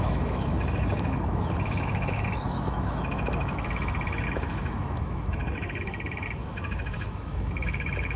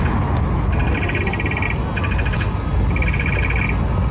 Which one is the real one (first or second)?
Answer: second